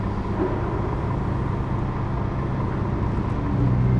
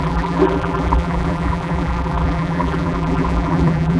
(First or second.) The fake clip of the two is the second